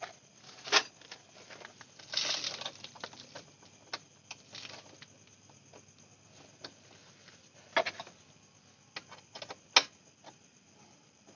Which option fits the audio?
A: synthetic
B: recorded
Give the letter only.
B